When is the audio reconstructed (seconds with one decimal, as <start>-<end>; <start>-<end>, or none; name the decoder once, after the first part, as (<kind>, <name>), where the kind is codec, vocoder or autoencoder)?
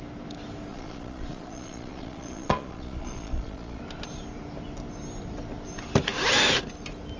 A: 0.7-3.8 (vocoder, Vocos)